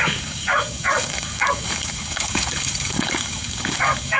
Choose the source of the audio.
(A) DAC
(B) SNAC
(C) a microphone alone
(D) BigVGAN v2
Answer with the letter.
A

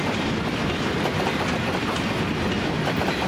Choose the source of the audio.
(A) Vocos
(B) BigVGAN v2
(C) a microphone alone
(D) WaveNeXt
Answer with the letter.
C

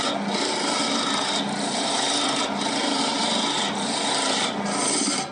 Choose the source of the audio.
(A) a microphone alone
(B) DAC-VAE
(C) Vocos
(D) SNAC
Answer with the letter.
A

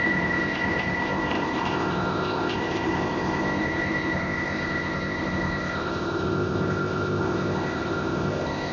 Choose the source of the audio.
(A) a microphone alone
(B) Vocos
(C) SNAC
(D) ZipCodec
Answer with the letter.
D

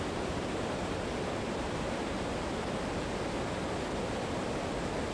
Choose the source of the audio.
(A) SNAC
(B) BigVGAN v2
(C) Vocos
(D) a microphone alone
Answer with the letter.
D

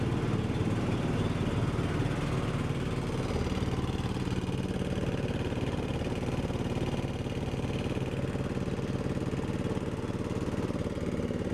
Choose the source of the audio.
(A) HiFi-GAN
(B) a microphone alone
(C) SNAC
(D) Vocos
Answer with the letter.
B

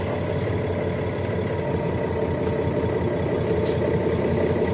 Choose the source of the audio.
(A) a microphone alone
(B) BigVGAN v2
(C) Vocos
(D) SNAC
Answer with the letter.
A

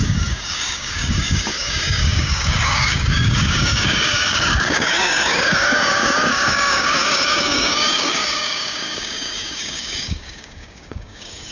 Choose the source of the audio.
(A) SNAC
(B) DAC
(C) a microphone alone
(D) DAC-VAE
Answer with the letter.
B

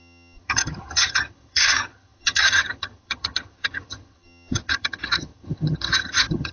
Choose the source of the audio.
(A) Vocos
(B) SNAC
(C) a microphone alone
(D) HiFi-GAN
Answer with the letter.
D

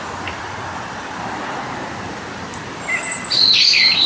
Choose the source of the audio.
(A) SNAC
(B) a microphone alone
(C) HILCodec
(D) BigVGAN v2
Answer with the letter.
D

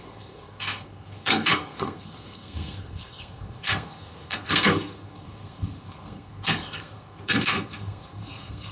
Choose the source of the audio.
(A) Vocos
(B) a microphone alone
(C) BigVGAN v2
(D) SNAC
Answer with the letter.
D